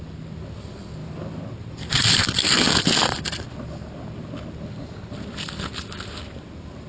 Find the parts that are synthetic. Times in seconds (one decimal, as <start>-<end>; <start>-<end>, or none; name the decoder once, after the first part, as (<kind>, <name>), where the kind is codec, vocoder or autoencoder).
none